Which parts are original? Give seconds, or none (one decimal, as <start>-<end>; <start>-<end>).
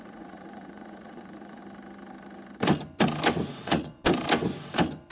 1.6-3.5; 4.0-5.1